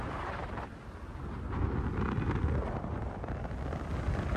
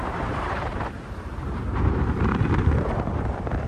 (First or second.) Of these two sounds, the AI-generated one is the second